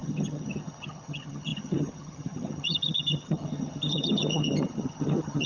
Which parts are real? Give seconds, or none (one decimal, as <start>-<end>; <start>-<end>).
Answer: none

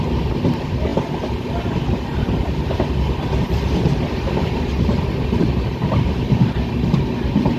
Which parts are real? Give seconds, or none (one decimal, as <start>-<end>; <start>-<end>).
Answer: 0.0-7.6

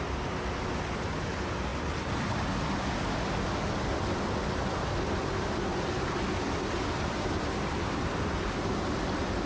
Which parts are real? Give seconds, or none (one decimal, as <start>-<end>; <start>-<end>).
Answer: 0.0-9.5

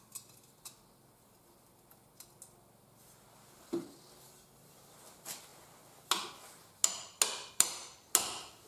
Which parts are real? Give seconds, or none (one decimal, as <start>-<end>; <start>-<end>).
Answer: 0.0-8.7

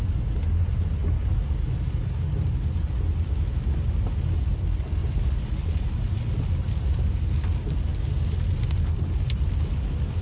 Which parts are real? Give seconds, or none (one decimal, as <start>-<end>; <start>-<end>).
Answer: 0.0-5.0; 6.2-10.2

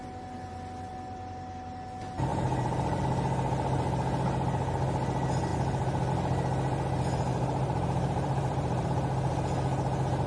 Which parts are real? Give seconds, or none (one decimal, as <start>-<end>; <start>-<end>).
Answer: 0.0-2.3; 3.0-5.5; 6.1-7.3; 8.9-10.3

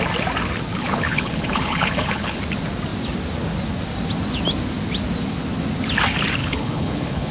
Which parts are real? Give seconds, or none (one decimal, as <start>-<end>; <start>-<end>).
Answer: 0.0-0.8; 2.4-6.4